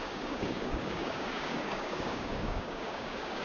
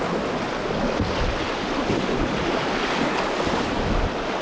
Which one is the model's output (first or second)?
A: first